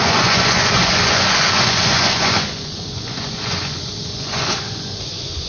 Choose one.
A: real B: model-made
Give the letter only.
B